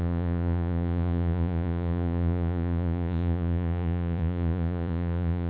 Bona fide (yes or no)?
no